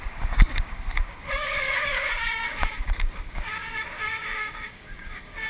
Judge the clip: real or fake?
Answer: fake